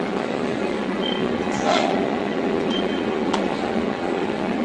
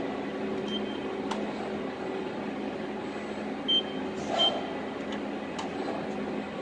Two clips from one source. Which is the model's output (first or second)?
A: first